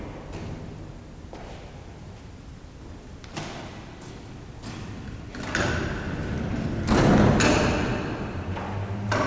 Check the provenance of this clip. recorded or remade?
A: recorded